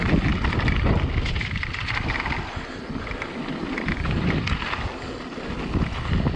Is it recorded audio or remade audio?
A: recorded